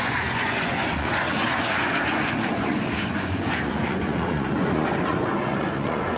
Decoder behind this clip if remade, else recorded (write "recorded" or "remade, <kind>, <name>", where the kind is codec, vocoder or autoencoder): remade, vocoder, Vocos